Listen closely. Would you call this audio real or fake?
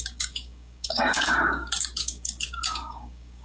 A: fake